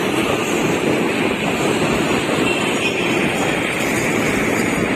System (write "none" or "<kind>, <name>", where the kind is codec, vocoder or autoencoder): vocoder, BigVGAN v2